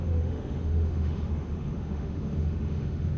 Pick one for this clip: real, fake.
fake